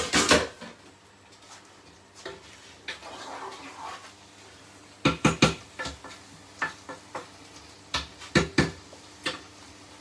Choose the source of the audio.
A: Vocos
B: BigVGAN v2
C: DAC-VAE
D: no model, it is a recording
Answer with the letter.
D